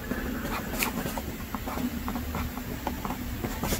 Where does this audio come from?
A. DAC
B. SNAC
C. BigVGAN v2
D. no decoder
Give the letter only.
D